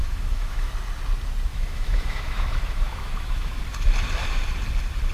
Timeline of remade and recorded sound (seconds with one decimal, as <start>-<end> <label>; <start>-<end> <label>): 0.0-0.7 remade; 0.7-1.5 recorded; 1.5-3.6 remade; 3.6-5.1 recorded